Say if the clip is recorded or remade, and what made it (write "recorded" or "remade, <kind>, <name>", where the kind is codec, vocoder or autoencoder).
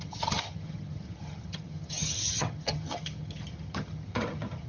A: remade, vocoder, HiFi-GAN